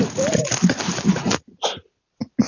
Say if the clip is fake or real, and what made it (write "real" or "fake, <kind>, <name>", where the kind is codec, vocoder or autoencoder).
real